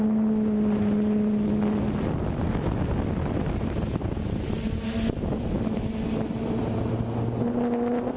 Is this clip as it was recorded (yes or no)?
yes